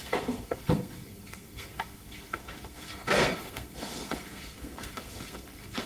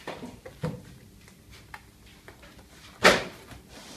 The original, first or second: second